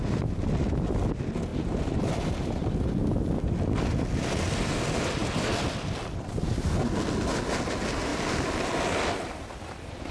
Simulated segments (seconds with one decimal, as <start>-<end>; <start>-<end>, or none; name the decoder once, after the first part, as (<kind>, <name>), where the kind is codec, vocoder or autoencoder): none